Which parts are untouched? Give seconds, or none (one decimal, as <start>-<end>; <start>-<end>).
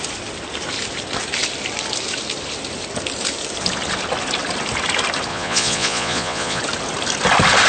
0.0-5.3; 6.6-7.7